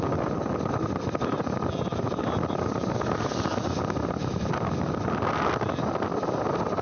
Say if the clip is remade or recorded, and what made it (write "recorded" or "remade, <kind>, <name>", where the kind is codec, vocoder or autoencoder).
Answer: recorded